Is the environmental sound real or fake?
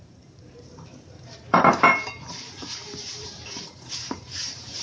fake